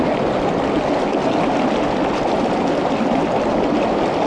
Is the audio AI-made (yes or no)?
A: no